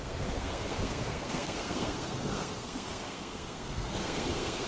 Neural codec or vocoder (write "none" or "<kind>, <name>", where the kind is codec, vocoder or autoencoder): codec, SNAC